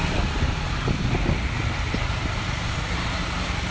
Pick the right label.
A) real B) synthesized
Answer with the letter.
A